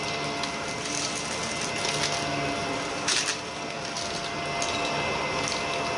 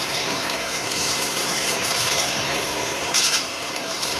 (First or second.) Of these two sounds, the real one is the first